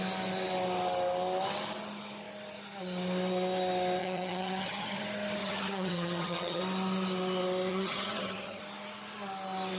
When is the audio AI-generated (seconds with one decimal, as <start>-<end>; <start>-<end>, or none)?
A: 4.0-5.0; 5.4-6.6; 7.7-8.6